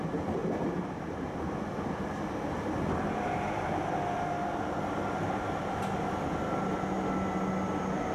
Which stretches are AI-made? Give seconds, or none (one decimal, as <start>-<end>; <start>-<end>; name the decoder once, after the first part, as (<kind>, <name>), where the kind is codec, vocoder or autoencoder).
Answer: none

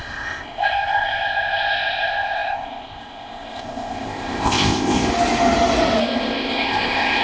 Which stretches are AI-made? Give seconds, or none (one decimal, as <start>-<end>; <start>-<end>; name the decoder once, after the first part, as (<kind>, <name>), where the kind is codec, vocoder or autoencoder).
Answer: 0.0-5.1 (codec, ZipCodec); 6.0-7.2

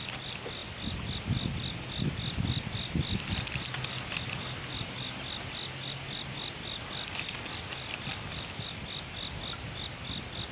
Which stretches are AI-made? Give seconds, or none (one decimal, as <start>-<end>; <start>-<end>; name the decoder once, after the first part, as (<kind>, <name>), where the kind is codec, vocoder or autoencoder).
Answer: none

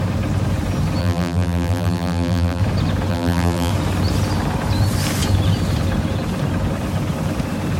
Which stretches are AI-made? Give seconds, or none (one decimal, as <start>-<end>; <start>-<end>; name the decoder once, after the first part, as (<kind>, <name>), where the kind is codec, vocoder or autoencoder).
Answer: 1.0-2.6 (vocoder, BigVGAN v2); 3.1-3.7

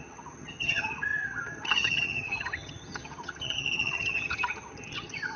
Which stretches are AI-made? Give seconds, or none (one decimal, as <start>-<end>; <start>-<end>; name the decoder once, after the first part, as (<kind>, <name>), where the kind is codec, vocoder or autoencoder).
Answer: 0.0-5.4 (vocoder, HiFi-GAN)

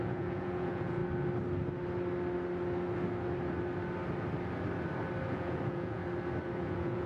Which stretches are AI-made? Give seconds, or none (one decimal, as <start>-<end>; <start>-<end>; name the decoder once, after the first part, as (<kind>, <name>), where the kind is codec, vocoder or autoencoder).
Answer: 0.0-1.0 (vocoder, Vocos); 5.3-6.0; 6.6-7.1

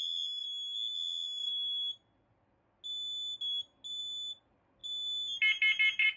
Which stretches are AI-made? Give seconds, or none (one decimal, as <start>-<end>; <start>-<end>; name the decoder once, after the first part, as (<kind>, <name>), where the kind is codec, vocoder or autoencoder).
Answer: none